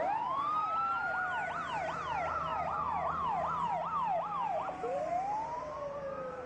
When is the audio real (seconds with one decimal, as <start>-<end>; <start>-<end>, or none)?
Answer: 0.6-1.5